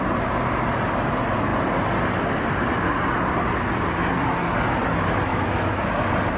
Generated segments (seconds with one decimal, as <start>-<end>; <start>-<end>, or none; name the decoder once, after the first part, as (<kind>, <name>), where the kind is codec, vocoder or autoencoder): 5.3-5.9 (autoencoder, DAC-VAE)